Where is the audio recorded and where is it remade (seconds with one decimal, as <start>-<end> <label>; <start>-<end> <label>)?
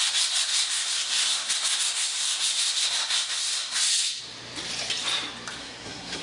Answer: 0.0-0.5 recorded; 0.5-4.2 remade; 4.2-5.6 recorded; 5.6-6.2 remade